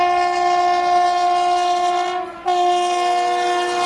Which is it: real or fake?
real